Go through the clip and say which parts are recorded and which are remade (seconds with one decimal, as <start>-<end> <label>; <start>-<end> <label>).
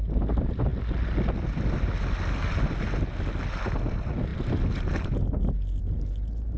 0.0-6.6 recorded